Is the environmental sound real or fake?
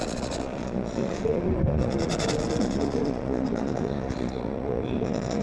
fake